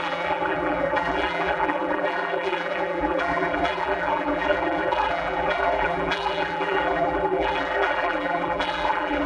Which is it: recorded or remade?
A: remade